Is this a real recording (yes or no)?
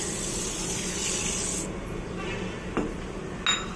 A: yes